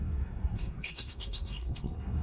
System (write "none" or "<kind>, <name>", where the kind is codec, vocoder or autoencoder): codec, SNAC